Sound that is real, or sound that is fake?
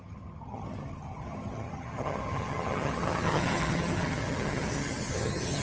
fake